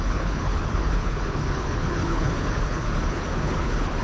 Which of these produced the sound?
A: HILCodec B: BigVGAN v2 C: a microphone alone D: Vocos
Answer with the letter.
A